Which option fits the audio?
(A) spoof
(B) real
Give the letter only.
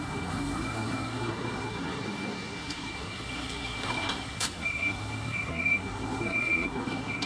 A